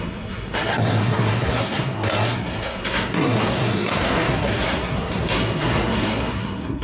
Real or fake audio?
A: fake